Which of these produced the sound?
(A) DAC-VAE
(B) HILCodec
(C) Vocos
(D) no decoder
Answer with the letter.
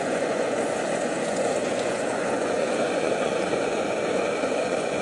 C